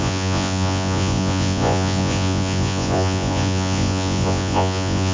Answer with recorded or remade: remade